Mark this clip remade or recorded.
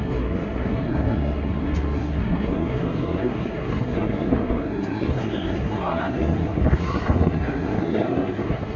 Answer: remade